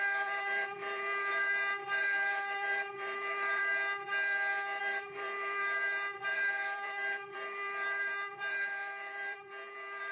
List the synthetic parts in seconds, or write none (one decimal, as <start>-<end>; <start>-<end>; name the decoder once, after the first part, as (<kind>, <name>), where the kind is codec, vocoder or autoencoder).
0.0-3.6 (vocoder, BigVGAN v2); 4.8-10.1